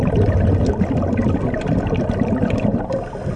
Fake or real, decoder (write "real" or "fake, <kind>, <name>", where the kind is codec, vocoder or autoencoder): real